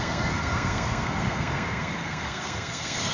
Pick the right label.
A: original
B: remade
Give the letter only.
B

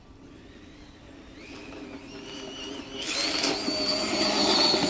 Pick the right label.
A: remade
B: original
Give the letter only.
B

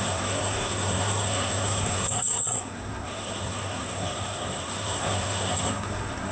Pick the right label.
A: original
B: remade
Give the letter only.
B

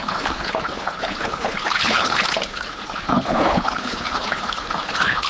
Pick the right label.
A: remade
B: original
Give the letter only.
A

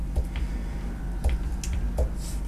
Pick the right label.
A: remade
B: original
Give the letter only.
B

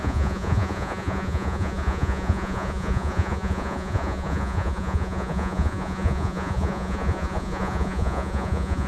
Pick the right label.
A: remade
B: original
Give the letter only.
A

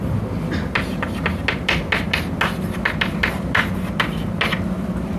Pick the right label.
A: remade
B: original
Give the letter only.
B